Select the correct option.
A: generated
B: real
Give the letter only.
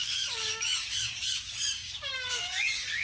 A